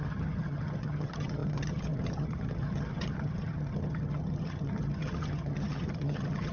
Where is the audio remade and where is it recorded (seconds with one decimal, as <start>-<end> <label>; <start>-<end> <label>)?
0.0-6.5 remade